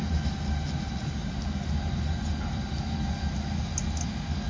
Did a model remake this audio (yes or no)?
no